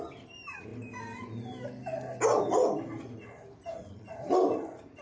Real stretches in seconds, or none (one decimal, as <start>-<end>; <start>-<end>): 0.7-3.7